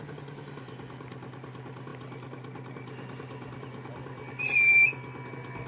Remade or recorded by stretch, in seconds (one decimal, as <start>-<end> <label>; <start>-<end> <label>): 0.0-5.7 recorded

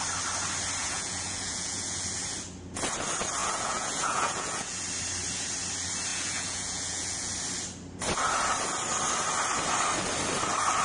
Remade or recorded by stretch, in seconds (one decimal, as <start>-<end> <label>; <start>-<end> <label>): 0.0-0.8 recorded; 0.8-2.0 remade; 2.0-3.4 recorded; 3.4-4.8 remade; 4.8-6.1 recorded; 6.1-7.3 remade; 7.3-10.8 recorded

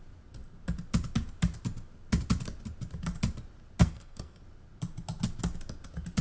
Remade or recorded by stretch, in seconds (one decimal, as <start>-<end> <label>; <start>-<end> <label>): 0.0-3.8 recorded; 3.8-4.4 remade; 4.4-6.2 recorded

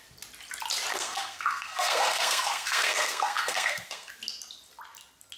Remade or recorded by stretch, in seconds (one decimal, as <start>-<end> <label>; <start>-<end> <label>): 0.0-0.9 recorded; 0.9-4.1 remade; 4.1-5.4 recorded

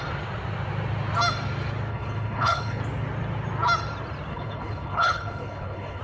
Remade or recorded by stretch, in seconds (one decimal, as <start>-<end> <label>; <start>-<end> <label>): 0.0-1.9 recorded; 1.9-2.8 remade; 2.8-4.3 recorded; 4.3-6.0 remade

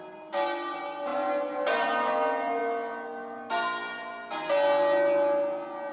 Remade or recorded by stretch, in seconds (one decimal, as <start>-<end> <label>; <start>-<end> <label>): 0.0-5.9 recorded